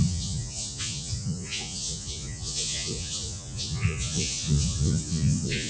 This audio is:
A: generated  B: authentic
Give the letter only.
A